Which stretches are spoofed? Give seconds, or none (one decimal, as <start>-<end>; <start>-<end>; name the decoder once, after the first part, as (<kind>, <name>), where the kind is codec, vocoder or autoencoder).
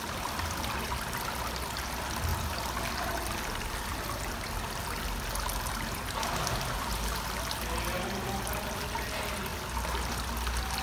none